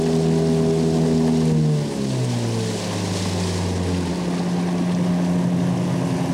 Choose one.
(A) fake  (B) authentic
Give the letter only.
B